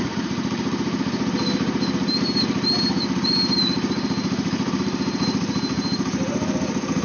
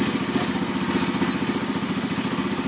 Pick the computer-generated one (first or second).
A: first